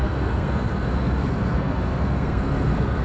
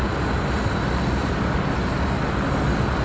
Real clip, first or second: second